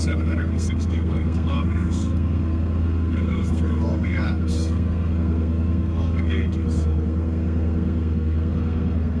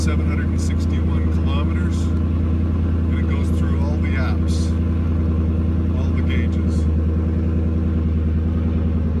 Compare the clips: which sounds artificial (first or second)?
first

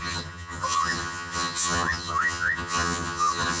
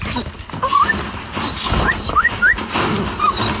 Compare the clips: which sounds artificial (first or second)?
first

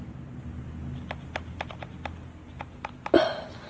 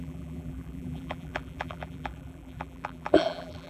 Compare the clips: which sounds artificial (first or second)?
second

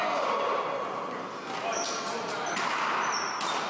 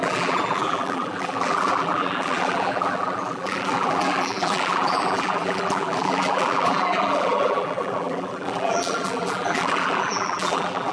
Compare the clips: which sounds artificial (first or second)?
second